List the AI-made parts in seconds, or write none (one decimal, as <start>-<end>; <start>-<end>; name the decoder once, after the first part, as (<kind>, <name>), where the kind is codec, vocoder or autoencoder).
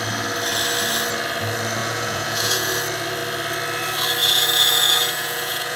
1.8-2.7 (vocoder, Vocos); 4.2-5.8